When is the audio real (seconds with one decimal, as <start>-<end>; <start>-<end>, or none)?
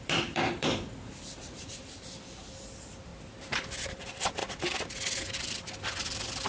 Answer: 3.1-3.8